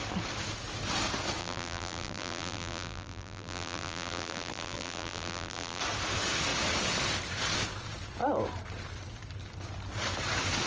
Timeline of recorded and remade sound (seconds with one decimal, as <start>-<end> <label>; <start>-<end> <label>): 0.0-1.4 recorded; 1.4-5.8 remade; 5.8-10.7 recorded

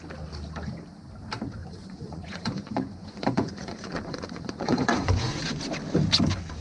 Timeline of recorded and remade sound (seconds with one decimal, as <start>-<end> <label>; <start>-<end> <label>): 0.0-1.6 recorded; 1.6-5.6 remade; 5.6-6.6 recorded

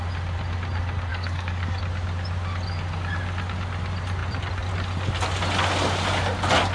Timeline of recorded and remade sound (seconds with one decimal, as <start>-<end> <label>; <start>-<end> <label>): 0.0-1.1 recorded; 1.1-1.8 remade; 1.8-6.7 recorded

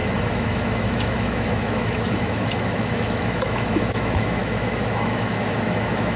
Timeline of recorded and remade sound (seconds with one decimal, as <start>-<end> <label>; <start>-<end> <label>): 0.0-6.2 remade

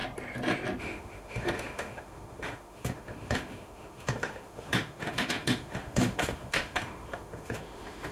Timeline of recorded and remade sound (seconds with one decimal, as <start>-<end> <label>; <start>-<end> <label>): 0.0-0.8 recorded; 0.8-8.1 remade